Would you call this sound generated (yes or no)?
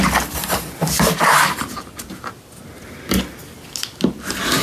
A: no